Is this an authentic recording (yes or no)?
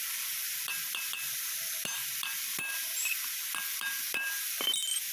no